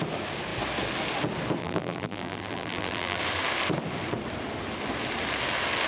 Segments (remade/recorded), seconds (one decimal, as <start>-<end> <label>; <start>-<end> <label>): 0.0-1.6 recorded; 1.6-3.2 remade; 3.2-5.9 recorded